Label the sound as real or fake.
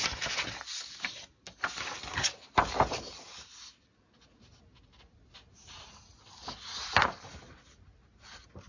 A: real